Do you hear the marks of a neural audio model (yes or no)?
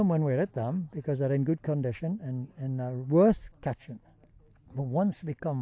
no